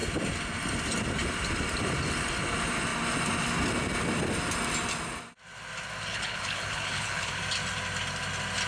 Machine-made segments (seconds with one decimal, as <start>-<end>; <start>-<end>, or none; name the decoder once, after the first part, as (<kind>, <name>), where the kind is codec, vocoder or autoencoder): 6.1-7.4 (codec, HILCodec)